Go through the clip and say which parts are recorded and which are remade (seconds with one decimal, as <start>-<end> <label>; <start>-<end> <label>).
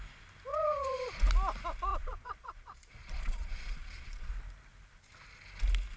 0.0-0.5 recorded; 0.5-1.2 remade; 1.2-1.9 recorded; 1.9-4.3 remade; 4.3-6.0 recorded